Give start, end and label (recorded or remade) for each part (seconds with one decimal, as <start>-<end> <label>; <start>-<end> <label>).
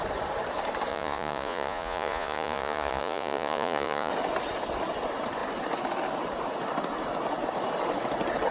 0.0-0.9 recorded; 0.9-4.1 remade; 4.1-8.5 recorded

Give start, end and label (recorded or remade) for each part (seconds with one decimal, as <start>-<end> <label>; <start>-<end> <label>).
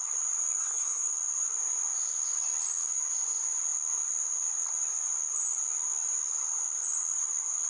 0.0-0.6 recorded; 0.6-1.1 remade; 1.1-7.7 recorded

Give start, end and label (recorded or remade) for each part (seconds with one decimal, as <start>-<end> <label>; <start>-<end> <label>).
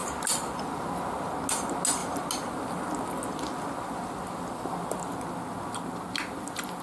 0.0-6.8 recorded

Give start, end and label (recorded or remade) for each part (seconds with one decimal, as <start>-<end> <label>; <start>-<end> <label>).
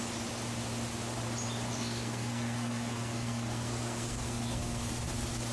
0.0-1.7 recorded; 1.7-5.0 remade; 5.0-5.5 recorded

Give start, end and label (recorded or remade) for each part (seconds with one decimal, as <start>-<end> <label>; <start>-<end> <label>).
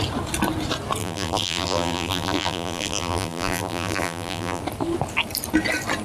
0.0-1.0 recorded; 1.0-4.6 remade; 4.6-6.0 recorded